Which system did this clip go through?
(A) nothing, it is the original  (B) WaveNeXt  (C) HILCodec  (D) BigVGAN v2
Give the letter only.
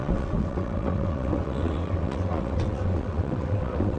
B